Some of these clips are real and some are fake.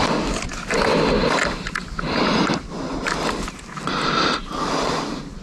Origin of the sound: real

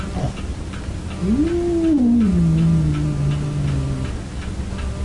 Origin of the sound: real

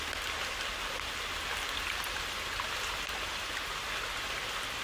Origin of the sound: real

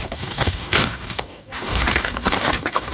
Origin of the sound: fake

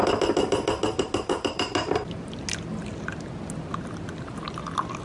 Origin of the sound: real